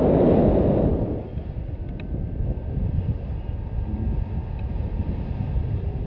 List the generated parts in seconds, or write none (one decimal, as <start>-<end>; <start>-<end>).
0.9-3.3